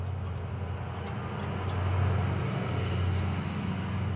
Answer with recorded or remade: recorded